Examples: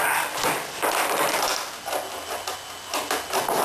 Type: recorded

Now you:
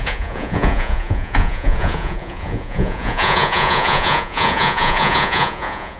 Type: remade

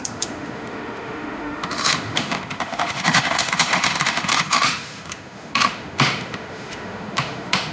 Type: remade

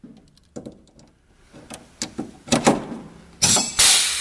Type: recorded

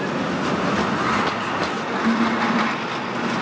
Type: recorded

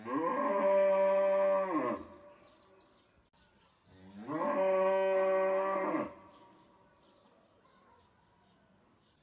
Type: recorded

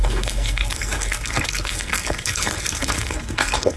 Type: remade